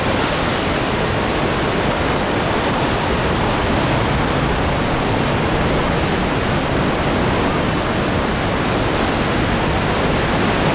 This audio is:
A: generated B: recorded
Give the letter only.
B